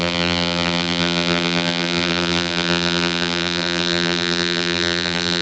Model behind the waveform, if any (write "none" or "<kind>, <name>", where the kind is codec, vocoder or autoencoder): vocoder, BigVGAN v2